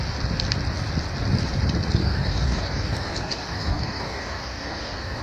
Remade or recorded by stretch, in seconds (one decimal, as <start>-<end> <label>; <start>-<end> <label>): 0.0-2.0 recorded; 2.0-5.2 remade